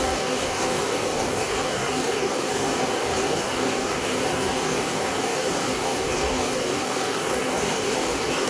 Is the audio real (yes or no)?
no